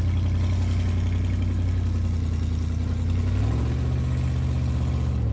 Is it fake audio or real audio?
real